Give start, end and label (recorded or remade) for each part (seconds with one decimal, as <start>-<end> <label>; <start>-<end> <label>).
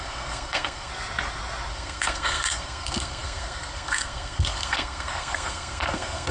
0.0-0.9 remade; 0.9-1.7 recorded; 1.7-6.3 remade